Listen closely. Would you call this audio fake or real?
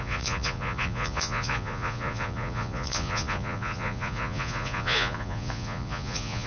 fake